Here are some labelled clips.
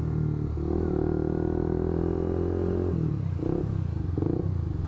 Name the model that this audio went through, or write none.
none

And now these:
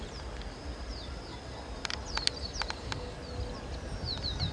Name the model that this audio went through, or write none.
none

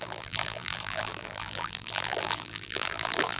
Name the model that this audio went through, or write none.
vocoder, BigVGAN v2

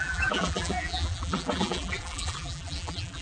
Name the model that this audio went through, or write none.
vocoder, BigVGAN v2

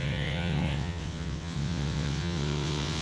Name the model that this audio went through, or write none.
vocoder, WaveNeXt